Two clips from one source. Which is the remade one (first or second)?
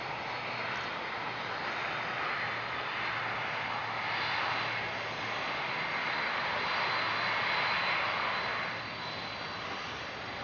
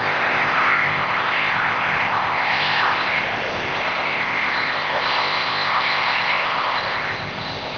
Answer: second